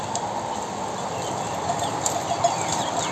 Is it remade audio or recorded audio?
recorded